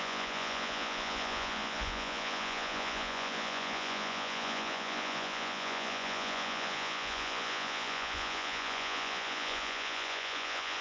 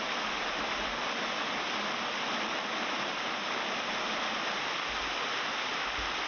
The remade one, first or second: first